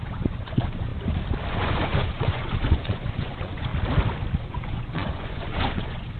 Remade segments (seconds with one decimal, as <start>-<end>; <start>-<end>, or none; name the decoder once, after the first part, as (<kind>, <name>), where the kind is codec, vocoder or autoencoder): 0.0-0.9 (vocoder, Vocos); 1.5-3.7; 4.4-6.2